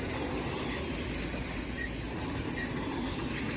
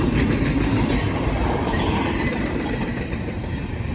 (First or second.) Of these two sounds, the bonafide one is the first